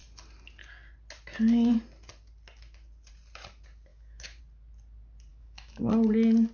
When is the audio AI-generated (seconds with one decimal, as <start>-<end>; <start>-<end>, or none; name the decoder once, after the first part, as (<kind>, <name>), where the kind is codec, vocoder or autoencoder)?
3.9-4.4 (autoencoder, DAC-VAE); 5.3-5.8